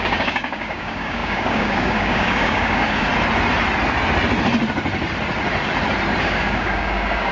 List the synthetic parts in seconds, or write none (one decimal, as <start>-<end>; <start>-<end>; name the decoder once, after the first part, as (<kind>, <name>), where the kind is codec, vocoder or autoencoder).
0.0-3.1 (codec, DAC); 6.2-7.3